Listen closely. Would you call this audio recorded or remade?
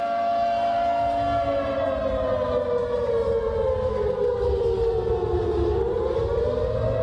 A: recorded